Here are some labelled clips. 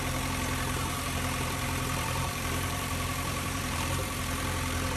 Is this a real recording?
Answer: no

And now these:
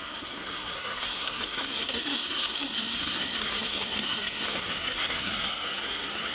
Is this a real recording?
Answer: no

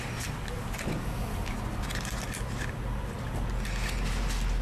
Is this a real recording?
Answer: yes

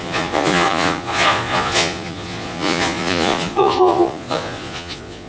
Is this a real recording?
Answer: no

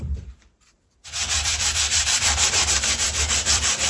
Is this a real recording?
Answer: no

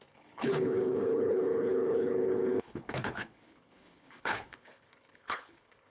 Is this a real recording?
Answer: no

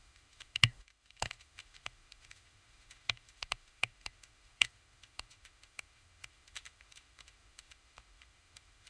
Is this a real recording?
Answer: no